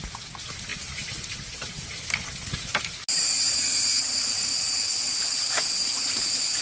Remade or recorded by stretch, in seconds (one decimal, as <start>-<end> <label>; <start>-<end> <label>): 0.0-3.5 recorded; 3.5-4.0 remade; 4.0-6.6 recorded